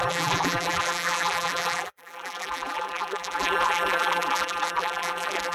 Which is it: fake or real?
fake